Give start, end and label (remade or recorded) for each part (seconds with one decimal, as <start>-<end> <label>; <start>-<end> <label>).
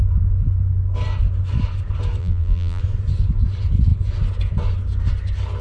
0.0-2.2 recorded; 2.2-2.8 remade; 2.8-5.6 recorded